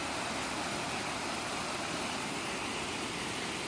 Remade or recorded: recorded